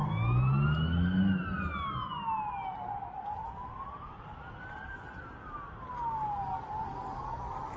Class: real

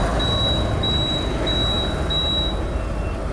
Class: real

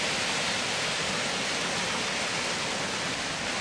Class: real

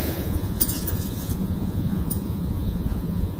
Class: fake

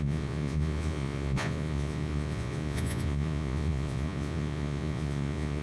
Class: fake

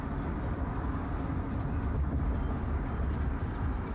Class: real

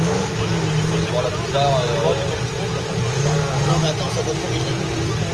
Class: real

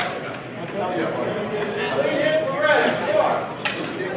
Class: real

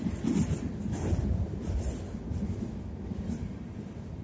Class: real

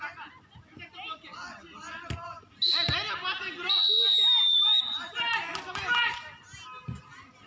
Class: real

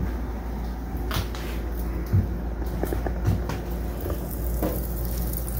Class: real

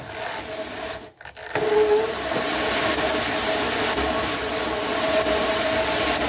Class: real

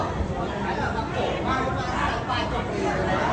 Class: real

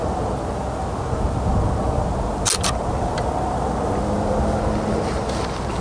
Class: real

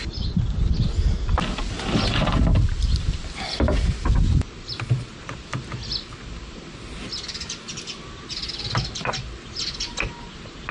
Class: real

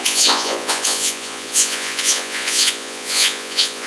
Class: fake